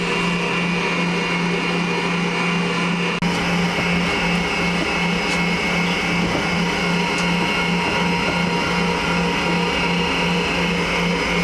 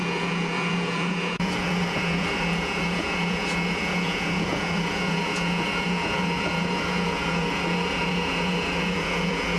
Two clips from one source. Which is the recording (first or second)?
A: first